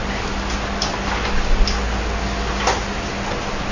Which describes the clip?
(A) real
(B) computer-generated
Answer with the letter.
A